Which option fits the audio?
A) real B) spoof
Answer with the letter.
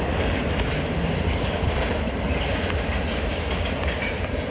B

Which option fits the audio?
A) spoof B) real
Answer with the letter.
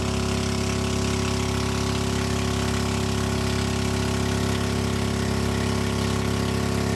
B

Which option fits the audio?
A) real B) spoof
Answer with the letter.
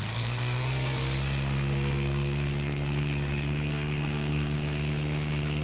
B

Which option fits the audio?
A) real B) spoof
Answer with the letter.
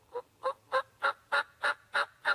B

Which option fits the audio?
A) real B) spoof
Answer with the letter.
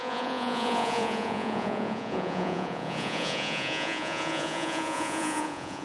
B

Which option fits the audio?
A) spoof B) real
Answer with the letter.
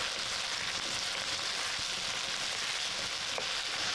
B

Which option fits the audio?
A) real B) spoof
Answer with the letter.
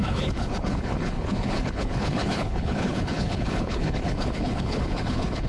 B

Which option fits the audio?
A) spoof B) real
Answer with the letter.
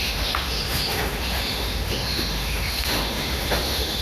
A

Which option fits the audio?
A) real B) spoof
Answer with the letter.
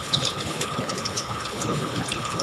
B